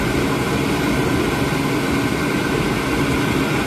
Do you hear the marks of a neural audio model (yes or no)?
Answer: no